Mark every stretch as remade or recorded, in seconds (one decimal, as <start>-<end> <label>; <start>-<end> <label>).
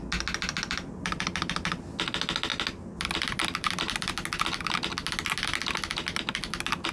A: 0.0-6.9 recorded